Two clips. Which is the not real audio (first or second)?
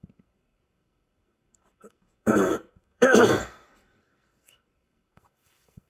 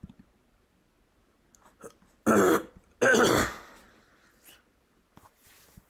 first